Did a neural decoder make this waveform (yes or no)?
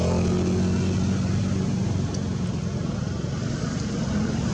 no